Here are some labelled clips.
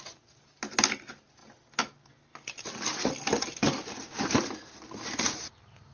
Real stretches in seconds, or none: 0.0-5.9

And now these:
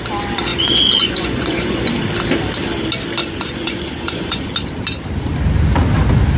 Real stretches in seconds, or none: 0.0-0.5; 1.9-3.2; 4.4-6.4

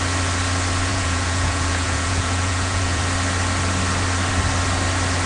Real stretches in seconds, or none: 0.0-0.9; 3.0-5.3

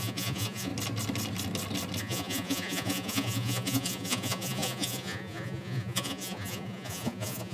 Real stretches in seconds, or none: 0.7-2.0

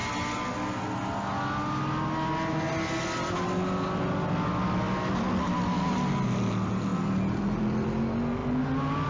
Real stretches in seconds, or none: 0.0-9.1

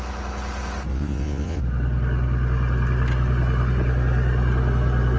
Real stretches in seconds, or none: 0.0-0.9; 1.6-5.2

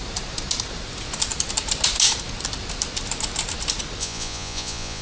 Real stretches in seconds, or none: 0.0-4.0